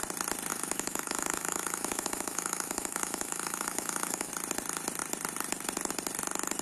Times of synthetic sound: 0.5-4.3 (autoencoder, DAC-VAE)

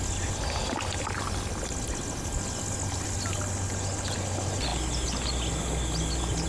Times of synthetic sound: none

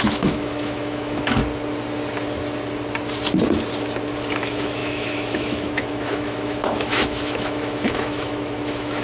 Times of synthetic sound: 0.0-1.4 (autoencoder, DAC-VAE); 4.3-9.0